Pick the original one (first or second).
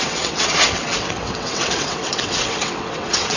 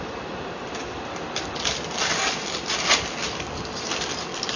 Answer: second